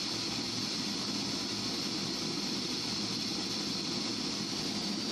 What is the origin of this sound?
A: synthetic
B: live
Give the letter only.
B